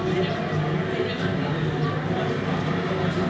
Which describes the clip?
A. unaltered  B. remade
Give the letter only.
A